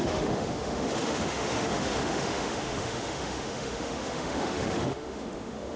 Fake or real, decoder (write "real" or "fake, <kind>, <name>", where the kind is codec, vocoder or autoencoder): fake, autoencoder, DAC-VAE